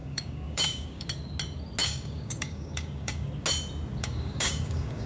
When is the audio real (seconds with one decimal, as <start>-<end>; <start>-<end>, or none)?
1.1-1.8; 3.3-4.0